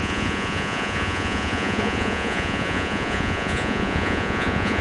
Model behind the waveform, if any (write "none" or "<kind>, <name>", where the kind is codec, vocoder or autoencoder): vocoder, Vocos